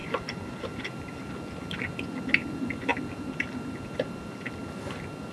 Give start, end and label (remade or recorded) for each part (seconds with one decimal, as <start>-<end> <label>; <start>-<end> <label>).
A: 0.0-5.3 recorded